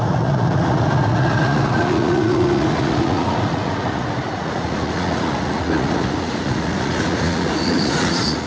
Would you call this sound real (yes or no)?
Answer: no